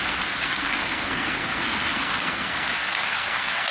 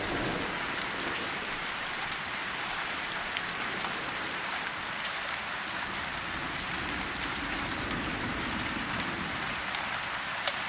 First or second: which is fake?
first